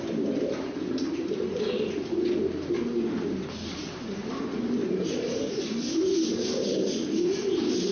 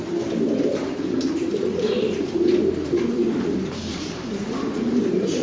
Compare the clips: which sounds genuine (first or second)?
first